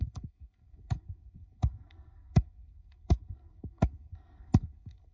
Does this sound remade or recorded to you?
remade